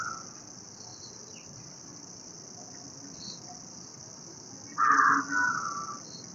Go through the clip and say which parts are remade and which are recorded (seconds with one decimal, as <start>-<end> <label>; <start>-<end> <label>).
0.0-0.9 recorded; 0.9-2.3 remade; 2.3-3.9 recorded; 3.9-4.5 remade; 4.5-6.3 recorded